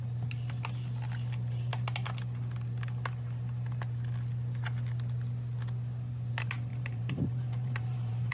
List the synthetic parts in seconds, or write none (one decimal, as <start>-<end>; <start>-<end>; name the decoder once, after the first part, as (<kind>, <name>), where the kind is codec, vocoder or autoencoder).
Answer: 6.7-8.3 (vocoder, BigVGAN v2)